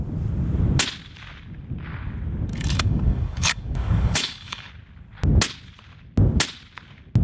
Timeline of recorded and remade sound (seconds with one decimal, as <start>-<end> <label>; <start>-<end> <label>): 0.0-2.5 recorded; 2.5-4.7 remade; 4.7-7.2 recorded